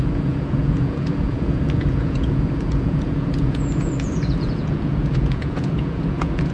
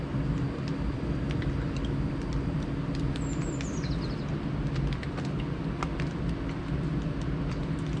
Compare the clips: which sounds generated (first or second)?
first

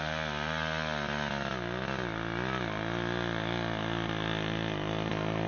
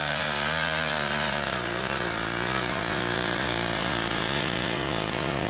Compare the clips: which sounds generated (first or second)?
second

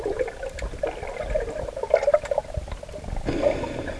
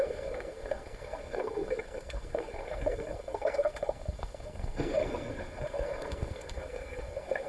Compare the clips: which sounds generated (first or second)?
second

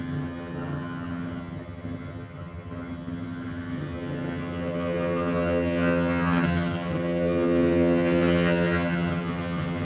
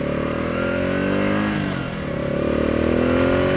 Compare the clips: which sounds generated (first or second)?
first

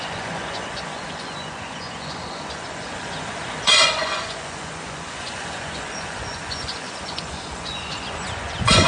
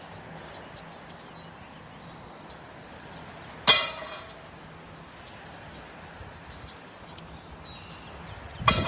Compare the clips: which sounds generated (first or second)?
first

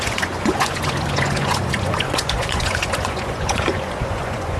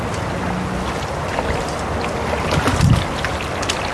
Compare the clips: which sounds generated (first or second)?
first